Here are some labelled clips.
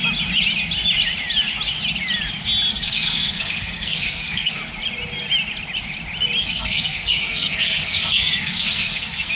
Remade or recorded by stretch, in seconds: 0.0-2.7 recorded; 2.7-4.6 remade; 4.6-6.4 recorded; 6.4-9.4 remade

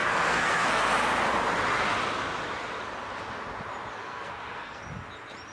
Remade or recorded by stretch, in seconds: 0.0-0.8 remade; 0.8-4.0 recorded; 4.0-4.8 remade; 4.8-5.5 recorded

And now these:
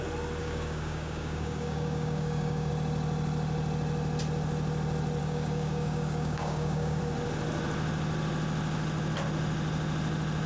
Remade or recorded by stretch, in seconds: 0.0-0.4 recorded; 0.4-2.7 remade; 2.7-5.2 recorded; 5.2-7.0 remade; 7.0-10.5 recorded

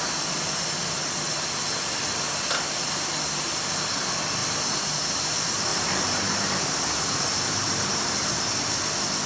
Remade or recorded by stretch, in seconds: 0.0-4.4 recorded; 4.4-5.3 remade; 5.3-5.7 recorded; 5.7-8.4 remade; 8.4-9.3 recorded